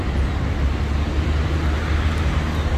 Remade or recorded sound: recorded